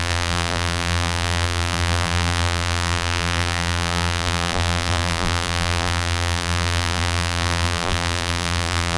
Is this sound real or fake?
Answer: fake